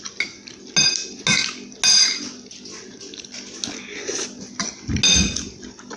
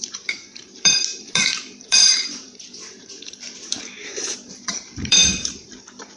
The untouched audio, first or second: first